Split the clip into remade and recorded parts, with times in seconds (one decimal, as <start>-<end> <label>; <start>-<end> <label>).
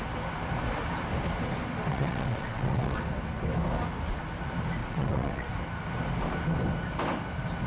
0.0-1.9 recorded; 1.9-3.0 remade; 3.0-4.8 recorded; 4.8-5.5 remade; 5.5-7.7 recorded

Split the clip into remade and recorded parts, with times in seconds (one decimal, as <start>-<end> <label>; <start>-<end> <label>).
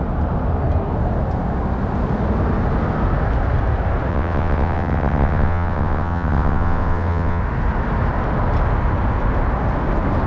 0.0-4.1 recorded; 4.1-7.4 remade; 7.4-10.3 recorded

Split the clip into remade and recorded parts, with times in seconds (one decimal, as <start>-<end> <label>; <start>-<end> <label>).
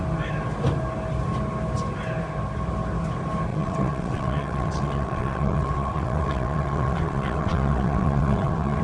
0.0-3.5 recorded; 3.5-8.8 remade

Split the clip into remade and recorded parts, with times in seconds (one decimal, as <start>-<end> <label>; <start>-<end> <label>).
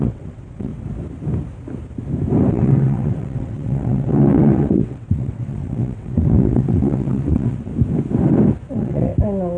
0.0-0.7 remade; 0.7-2.5 recorded; 2.5-7.7 remade; 7.7-8.7 recorded; 8.7-9.1 remade; 9.1-9.6 recorded